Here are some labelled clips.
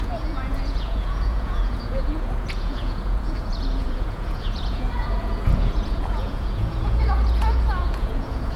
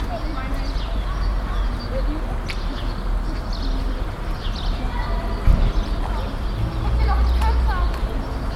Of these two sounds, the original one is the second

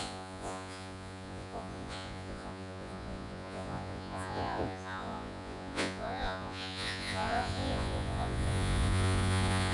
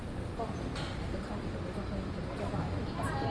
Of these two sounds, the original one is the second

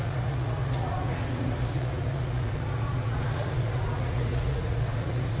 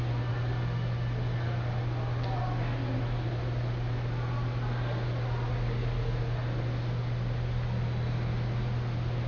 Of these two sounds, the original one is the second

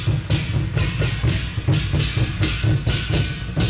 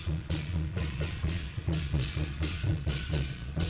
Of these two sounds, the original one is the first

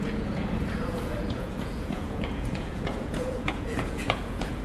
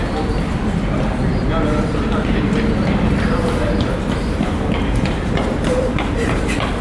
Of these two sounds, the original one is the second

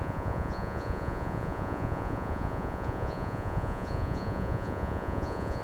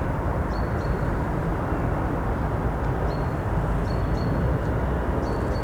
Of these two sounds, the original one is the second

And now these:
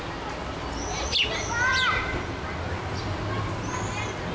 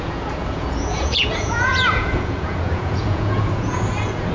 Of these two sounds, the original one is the first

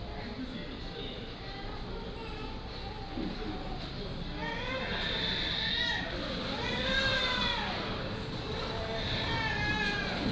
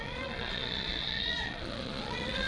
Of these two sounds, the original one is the first